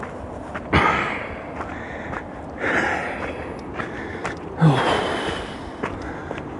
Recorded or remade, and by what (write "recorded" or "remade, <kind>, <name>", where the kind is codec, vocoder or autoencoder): recorded